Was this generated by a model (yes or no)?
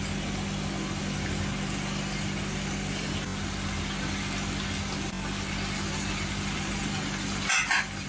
no